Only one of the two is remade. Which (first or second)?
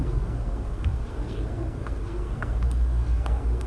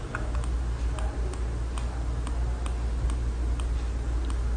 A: first